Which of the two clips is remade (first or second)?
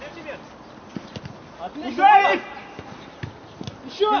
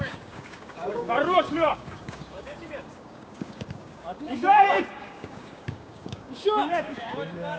second